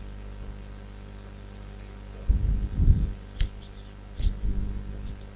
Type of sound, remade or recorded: recorded